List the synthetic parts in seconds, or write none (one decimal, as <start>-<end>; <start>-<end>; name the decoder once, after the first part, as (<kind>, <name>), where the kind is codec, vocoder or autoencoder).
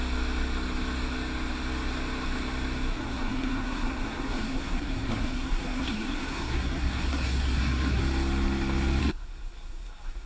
2.9-8.0 (codec, SNAC); 9.0-10.3